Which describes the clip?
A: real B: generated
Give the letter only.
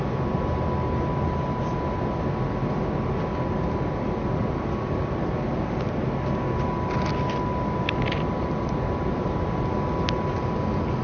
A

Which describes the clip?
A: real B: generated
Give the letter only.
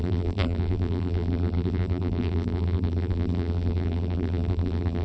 B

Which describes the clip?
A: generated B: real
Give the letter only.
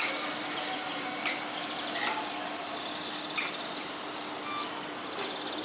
B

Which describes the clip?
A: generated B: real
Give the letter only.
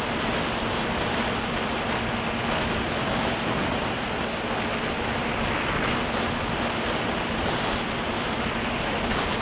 B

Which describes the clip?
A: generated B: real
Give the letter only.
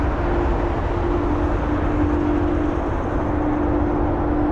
B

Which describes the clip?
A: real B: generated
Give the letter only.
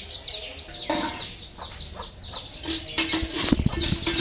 A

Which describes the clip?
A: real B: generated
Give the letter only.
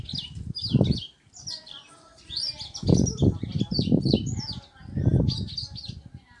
A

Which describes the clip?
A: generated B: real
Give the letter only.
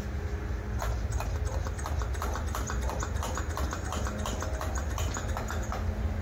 B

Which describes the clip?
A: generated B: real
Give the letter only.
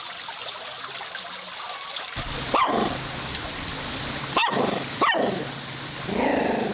B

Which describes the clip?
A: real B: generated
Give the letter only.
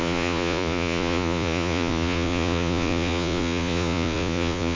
B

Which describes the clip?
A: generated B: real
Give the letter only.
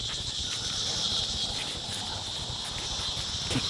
B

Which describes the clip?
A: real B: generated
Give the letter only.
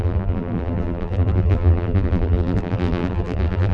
B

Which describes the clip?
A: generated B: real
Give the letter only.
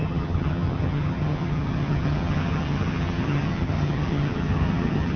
A